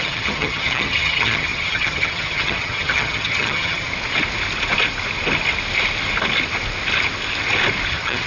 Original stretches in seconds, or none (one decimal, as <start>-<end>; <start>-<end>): 3.9-7.9